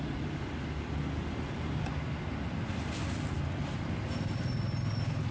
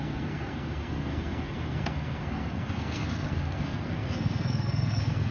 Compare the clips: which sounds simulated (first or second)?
second